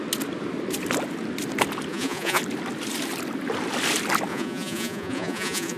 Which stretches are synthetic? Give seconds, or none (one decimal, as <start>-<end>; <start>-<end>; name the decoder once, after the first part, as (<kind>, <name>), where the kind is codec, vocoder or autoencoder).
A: 1.9-2.4 (vocoder, Vocos); 4.3-5.8